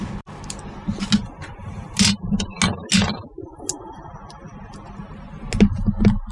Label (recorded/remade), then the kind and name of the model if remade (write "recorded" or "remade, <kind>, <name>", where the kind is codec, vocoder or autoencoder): recorded